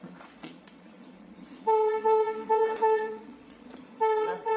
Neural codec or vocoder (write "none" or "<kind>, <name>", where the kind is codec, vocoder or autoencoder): vocoder, Vocos